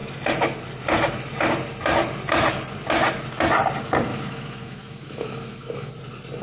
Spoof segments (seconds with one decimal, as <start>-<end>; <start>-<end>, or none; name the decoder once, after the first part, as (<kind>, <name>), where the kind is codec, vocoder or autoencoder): 4.1-5.9 (autoencoder, DAC-VAE)